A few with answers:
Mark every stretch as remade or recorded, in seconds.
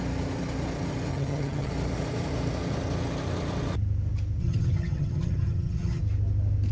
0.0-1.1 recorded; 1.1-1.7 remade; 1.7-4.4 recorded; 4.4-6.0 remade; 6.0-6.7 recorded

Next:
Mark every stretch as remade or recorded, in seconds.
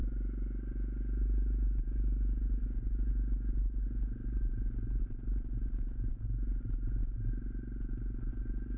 0.0-8.8 recorded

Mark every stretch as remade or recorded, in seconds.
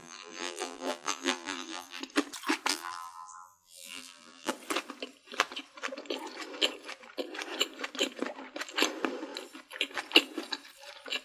0.0-2.0 remade; 2.0-2.7 recorded; 2.7-4.5 remade; 4.5-11.2 recorded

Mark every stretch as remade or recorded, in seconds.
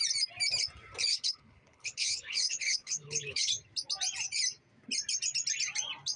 0.0-1.1 recorded; 1.1-3.5 remade; 3.5-6.2 recorded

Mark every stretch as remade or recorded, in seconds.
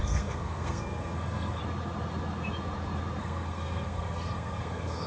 0.0-1.6 remade; 1.6-3.2 recorded; 3.2-5.1 remade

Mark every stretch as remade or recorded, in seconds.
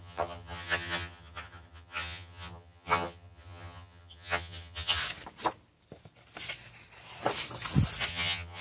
0.0-5.0 remade; 5.0-8.1 recorded; 8.1-8.6 remade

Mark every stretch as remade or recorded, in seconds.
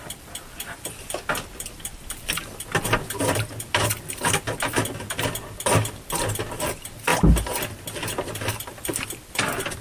0.0-9.8 recorded